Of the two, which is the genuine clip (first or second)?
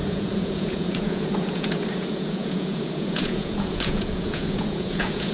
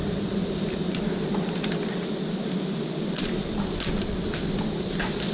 second